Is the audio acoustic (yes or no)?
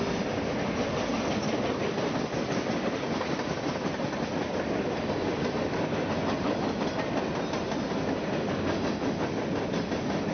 yes